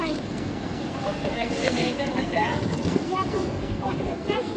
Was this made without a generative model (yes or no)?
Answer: no